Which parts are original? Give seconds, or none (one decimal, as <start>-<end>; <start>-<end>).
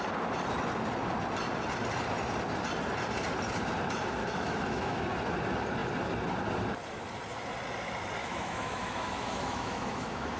0.0-4.2; 5.0-8.2